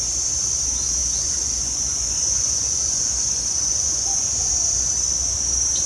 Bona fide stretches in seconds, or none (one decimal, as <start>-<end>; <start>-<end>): 0.0-1.0; 4.5-5.9